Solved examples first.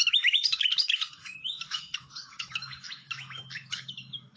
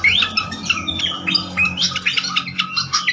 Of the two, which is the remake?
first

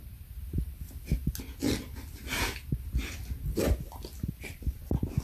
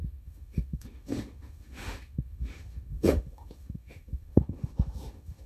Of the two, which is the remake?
second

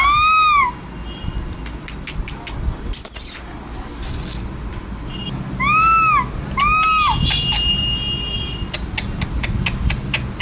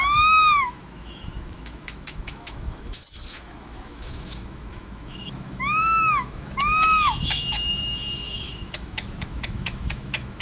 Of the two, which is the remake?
second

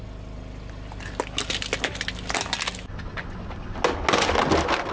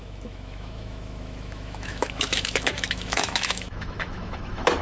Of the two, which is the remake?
second